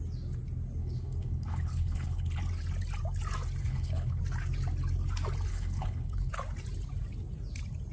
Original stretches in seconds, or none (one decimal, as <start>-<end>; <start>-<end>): 0.0-0.8; 2.4-3.6; 4.2-5.5; 6.3-7.9